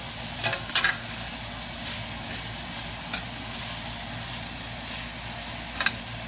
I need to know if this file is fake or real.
real